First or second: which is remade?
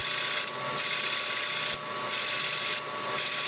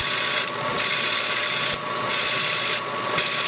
second